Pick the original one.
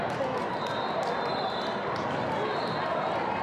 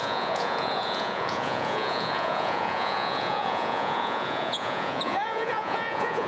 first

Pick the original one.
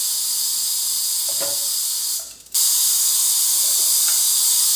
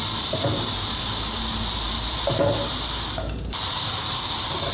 first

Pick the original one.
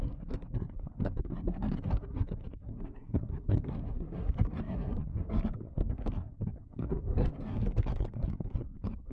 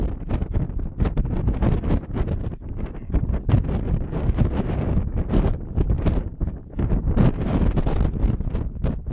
second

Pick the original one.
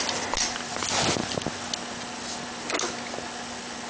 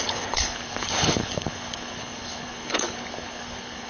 first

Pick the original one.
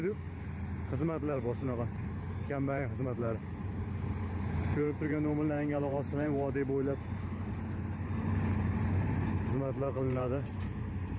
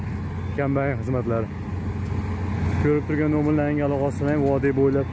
second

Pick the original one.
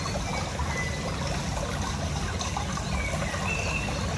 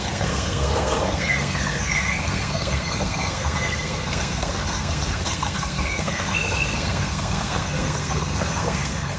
first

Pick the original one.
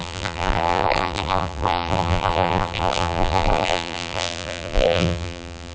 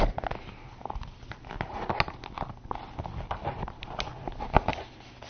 second